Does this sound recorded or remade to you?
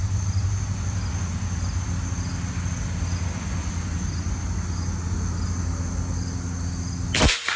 recorded